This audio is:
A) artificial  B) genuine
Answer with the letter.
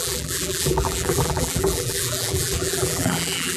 A